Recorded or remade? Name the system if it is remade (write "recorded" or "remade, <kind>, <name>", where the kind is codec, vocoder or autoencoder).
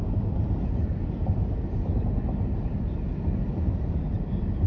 recorded